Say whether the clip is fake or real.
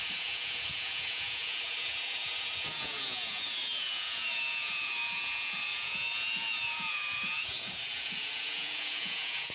fake